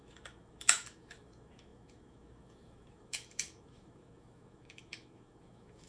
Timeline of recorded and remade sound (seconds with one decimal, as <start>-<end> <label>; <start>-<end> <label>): 0.0-5.9 remade